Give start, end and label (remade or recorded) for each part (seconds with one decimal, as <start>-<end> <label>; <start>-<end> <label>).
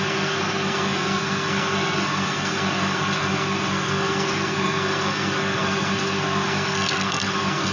0.0-7.7 remade